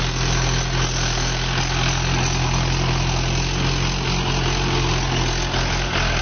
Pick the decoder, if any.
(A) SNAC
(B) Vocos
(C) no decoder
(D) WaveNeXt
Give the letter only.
C